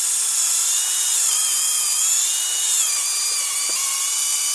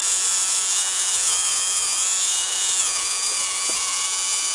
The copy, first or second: second